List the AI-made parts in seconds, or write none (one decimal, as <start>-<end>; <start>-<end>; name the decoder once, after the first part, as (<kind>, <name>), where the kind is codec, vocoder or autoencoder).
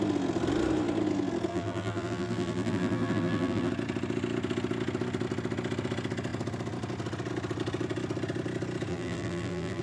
1.5-3.7 (vocoder, BigVGAN v2); 8.9-9.8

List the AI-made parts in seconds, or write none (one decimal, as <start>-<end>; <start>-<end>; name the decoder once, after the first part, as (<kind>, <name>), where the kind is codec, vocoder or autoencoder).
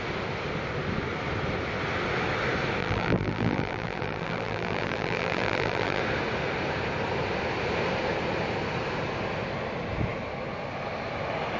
2.8-6.0 (vocoder, BigVGAN v2)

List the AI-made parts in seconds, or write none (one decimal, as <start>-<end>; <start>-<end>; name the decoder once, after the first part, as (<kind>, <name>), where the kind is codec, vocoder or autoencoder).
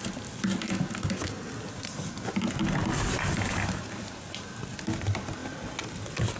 none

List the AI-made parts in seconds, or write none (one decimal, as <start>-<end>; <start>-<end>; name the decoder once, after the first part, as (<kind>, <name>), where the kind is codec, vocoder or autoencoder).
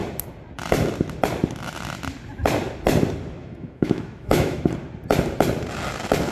3.4-4.6 (autoencoder, DAC-VAE)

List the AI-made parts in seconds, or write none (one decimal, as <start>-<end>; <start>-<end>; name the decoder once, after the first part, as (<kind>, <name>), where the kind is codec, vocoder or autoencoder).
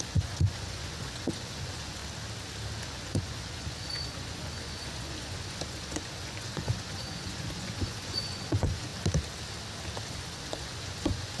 0.0-2.0 (vocoder, Vocos); 2.8-8.9; 10.1-11.4